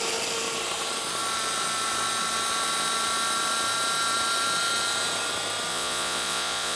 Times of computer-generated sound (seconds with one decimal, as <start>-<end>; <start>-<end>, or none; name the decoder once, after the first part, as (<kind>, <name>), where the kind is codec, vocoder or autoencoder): 5.7-6.8 (vocoder, Vocos)

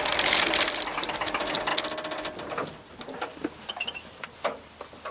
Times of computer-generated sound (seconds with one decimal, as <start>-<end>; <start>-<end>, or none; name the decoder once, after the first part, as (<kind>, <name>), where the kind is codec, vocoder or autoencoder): none

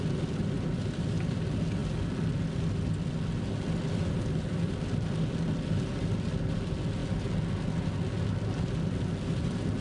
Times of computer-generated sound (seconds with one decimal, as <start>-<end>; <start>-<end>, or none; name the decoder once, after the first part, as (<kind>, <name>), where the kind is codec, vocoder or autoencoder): none

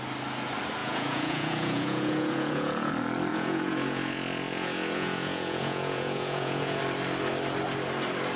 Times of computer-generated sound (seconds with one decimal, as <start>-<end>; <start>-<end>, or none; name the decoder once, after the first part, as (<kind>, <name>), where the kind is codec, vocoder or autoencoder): 0.8-2.9 (vocoder, Vocos); 3.3-6.8

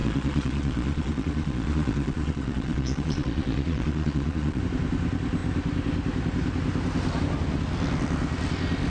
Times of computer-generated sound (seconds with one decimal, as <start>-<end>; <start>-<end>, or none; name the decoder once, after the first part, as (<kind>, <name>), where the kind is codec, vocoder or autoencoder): 0.0-4.6 (vocoder, Vocos)